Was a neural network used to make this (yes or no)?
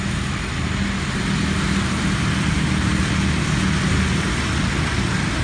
no